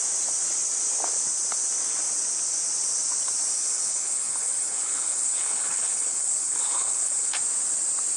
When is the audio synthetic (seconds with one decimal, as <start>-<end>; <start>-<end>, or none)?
3.5-7.3